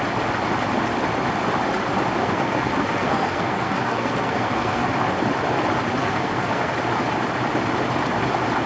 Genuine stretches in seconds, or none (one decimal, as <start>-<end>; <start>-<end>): 0.0-2.2; 4.9-6.0; 6.7-8.7